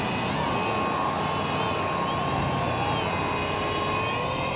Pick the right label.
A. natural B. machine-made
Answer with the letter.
A